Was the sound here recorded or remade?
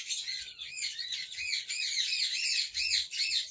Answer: remade